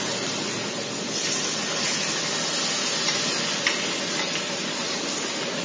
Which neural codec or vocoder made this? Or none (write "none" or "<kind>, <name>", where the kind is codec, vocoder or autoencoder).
none